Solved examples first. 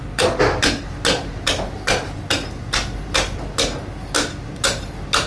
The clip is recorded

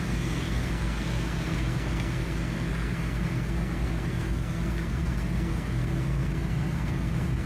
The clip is remade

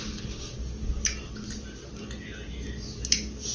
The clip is recorded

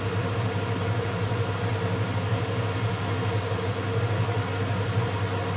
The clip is recorded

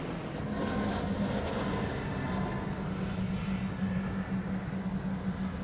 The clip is recorded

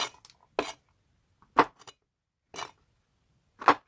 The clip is recorded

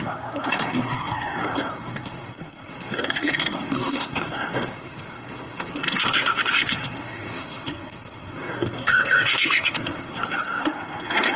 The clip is remade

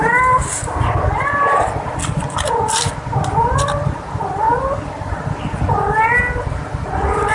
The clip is recorded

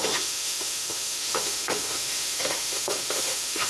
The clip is remade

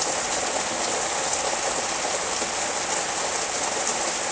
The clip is recorded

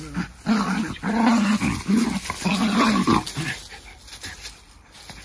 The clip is recorded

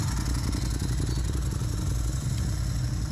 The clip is recorded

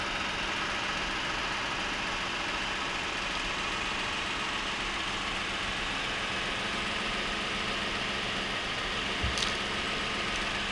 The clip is recorded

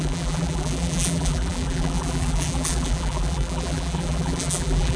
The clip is remade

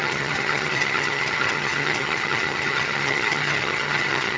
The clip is remade